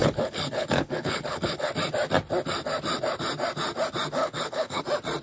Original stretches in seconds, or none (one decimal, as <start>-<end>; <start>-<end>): 1.7-4.2; 4.8-5.2